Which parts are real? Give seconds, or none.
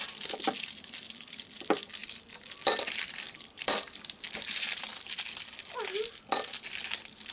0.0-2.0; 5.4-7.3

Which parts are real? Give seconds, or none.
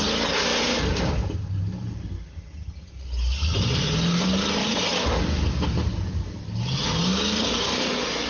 0.0-0.5; 2.0-4.6; 5.2-8.3